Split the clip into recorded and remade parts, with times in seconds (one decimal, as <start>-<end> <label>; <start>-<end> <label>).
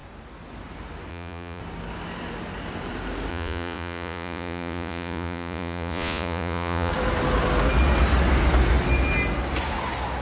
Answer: 0.0-1.1 recorded; 1.1-1.6 remade; 1.6-3.3 recorded; 3.3-6.9 remade; 6.9-10.2 recorded